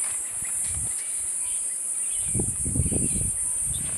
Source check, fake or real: real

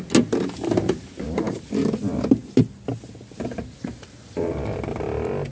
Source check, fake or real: real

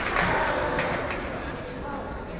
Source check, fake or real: real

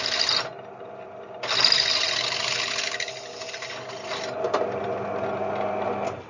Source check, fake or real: real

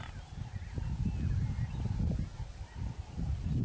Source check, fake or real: real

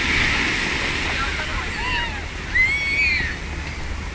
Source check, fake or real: real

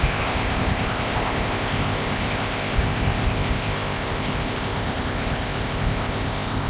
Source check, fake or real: fake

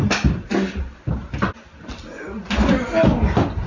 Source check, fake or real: real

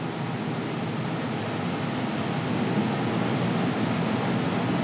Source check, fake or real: real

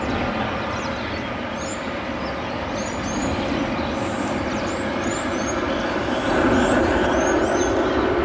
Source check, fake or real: real